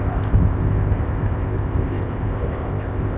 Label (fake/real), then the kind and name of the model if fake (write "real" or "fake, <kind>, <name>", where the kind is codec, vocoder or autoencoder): fake, codec, ZipCodec